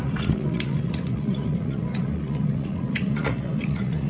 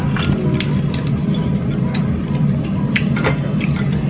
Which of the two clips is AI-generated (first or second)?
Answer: first